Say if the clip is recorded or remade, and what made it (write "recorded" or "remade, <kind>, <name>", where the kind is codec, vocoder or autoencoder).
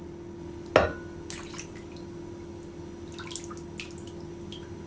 recorded